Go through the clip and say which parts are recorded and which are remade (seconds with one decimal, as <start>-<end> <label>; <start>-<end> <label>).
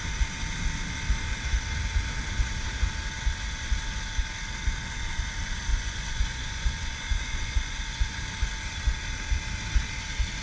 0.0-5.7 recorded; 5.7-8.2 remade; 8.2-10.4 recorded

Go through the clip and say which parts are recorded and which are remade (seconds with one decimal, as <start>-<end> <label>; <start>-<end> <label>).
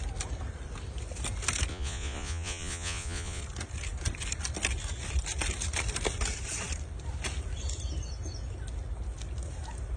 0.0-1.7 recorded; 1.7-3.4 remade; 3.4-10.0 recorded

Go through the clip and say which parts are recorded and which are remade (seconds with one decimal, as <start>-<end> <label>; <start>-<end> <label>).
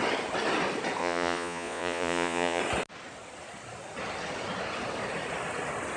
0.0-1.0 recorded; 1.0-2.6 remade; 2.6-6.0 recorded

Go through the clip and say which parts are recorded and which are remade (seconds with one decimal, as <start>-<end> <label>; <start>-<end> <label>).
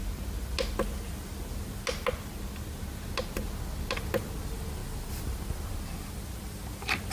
0.0-7.1 recorded